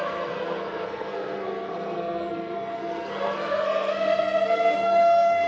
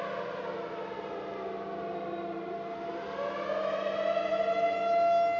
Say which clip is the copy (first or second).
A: first